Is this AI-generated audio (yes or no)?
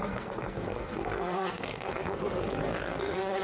yes